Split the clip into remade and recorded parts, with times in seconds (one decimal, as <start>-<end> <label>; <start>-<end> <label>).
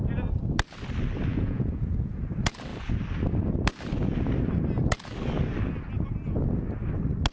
0.0-1.3 recorded; 1.3-2.2 remade; 2.2-7.3 recorded